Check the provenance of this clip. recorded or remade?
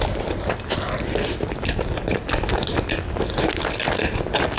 recorded